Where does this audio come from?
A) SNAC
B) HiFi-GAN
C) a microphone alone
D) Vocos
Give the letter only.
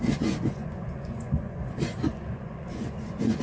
D